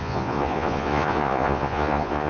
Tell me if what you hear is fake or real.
fake